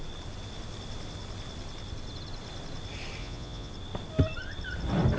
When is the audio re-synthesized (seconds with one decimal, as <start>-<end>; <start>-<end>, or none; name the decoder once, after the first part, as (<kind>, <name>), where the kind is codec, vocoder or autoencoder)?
3.2-3.7 (vocoder, Vocos)